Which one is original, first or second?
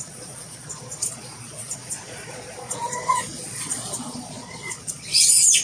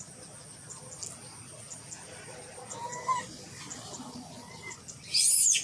second